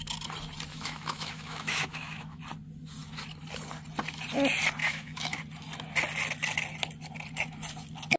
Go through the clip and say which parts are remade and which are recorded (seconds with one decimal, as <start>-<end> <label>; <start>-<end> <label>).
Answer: 0.0-0.7 recorded; 0.7-2.4 remade; 2.4-4.8 recorded; 4.8-5.4 remade; 5.4-8.2 recorded